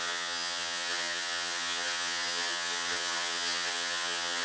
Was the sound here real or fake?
fake